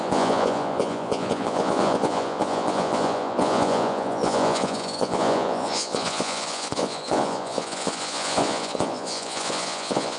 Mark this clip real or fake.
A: fake